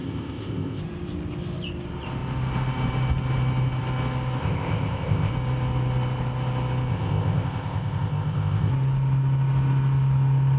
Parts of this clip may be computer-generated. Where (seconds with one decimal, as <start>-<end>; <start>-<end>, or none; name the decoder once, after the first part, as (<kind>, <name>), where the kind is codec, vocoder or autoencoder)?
0.0-0.8 (codec, ZipCodec); 4.4-5.3; 6.9-8.7